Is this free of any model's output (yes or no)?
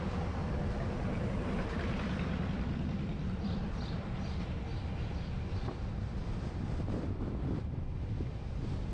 no